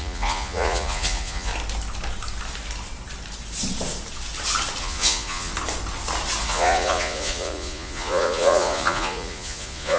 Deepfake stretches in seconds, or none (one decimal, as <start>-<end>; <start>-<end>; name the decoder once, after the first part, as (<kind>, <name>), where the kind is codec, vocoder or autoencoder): 0.0-1.5 (vocoder, Vocos); 4.8-5.5; 6.4-10.0